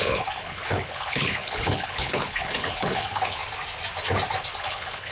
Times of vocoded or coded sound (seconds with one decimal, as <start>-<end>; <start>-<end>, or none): 0.0-3.4; 4.5-5.1